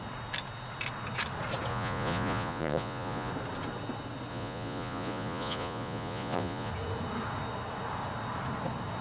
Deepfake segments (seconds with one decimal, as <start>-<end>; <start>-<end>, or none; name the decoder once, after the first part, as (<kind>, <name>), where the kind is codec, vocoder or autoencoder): 1.7-3.3 (vocoder, Vocos); 4.3-6.7